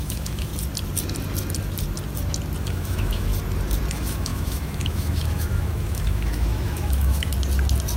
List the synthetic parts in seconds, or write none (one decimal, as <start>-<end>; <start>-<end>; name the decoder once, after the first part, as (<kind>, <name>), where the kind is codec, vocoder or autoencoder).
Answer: 0.0-0.5 (autoencoder, DAC-VAE); 2.6-3.3; 3.9-7.3